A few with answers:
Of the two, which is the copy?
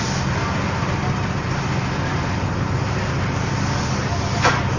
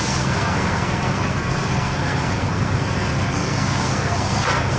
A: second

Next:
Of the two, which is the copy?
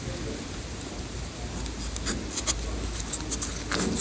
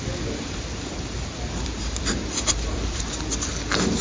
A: second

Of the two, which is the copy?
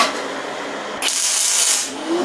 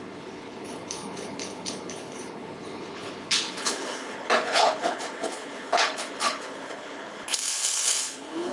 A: second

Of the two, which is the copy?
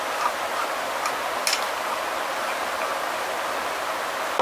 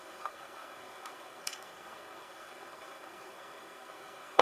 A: second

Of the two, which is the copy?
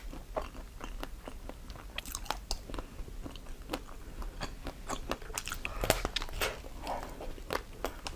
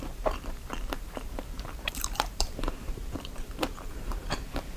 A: second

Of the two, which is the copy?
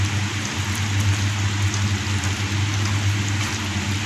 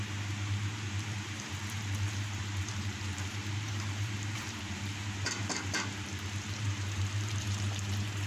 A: second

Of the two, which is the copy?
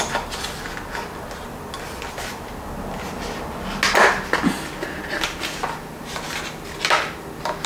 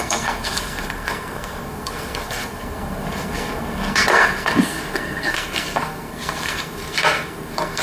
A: second